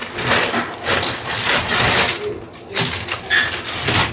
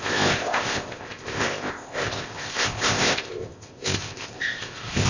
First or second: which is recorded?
first